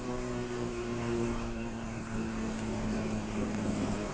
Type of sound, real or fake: fake